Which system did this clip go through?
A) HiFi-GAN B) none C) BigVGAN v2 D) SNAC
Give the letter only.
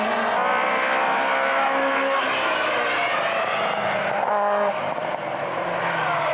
B